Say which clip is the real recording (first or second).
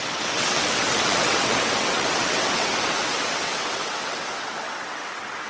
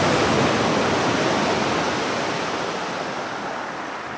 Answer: second